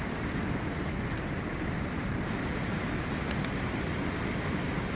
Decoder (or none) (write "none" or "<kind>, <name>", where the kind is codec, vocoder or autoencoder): none